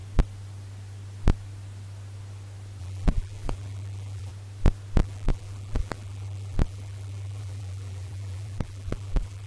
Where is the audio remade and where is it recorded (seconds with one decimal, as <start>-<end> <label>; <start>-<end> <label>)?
0.0-2.8 recorded; 2.8-4.3 remade; 4.3-5.0 recorded; 5.0-9.5 remade